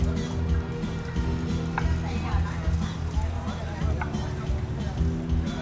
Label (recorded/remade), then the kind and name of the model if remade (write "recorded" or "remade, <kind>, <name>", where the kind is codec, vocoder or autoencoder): recorded